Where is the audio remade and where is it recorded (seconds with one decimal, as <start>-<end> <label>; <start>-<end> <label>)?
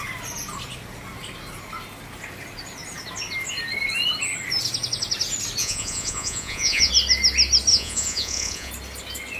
0.0-5.6 recorded; 5.6-6.9 remade; 6.9-7.7 recorded; 7.7-8.7 remade; 8.7-9.4 recorded